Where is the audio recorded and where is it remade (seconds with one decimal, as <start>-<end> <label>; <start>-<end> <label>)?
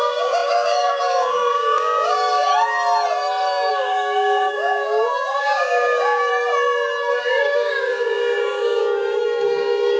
0.0-2.5 remade; 2.5-3.7 recorded; 3.7-6.3 remade; 6.3-7.1 recorded; 7.1-10.0 remade